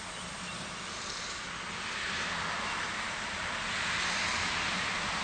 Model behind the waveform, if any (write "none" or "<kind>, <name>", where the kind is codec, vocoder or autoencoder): none